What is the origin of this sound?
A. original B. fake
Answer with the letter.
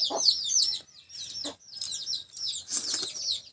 A